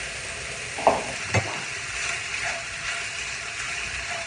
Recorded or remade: recorded